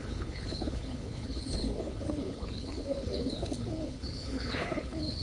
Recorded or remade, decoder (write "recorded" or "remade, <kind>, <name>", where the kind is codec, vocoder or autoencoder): remade, codec, HILCodec